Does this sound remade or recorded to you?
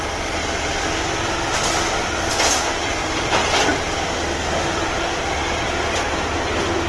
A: recorded